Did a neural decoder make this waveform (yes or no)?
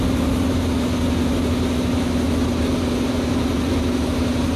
no